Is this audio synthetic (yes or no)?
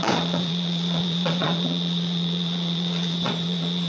yes